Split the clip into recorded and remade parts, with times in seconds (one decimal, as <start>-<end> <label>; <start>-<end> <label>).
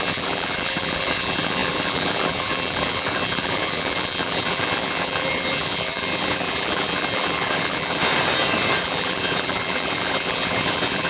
0.0-8.0 remade; 8.0-8.8 recorded; 8.8-11.1 remade